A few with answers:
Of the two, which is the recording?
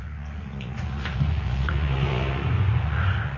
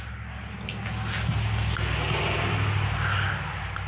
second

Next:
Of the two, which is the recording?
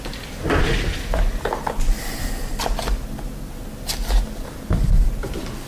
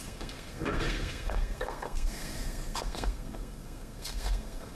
first